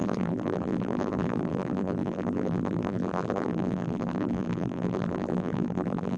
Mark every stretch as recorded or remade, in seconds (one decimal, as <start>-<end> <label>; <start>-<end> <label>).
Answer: 0.0-6.2 remade

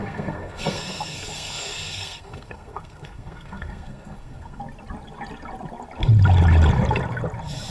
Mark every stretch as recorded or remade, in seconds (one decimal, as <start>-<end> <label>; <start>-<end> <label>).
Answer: 0.0-4.6 remade; 4.6-7.7 recorded